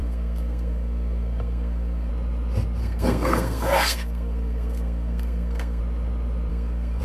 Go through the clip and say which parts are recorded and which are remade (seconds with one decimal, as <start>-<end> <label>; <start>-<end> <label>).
0.0-2.1 remade; 2.1-2.8 recorded; 2.8-5.8 remade; 5.8-6.5 recorded; 6.5-7.0 remade